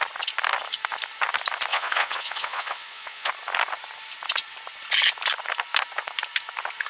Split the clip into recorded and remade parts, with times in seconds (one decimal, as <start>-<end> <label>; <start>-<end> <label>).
0.0-1.7 recorded; 1.7-3.3 remade; 3.3-6.9 recorded

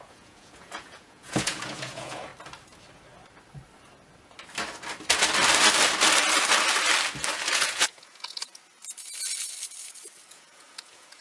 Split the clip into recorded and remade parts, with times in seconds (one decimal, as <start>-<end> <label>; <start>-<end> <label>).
0.0-2.3 remade; 2.3-7.5 recorded; 7.5-8.6 remade; 8.6-10.3 recorded; 10.3-11.2 remade

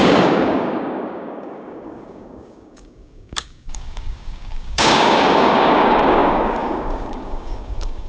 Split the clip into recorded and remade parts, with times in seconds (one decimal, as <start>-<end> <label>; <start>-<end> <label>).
0.0-8.1 remade

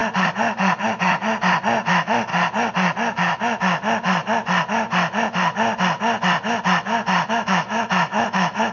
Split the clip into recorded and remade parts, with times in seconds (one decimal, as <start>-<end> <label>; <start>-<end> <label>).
0.0-1.9 recorded; 1.9-2.3 remade; 2.3-7.3 recorded; 7.3-8.7 remade

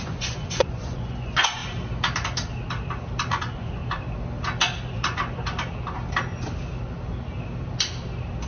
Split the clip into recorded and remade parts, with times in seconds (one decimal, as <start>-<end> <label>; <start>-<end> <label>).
0.0-1.6 remade; 1.6-3.3 recorded; 3.3-3.8 remade; 3.8-8.5 recorded